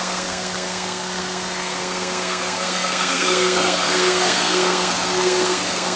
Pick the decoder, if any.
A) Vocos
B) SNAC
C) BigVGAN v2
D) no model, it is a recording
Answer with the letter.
B